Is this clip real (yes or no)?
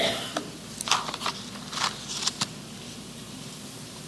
yes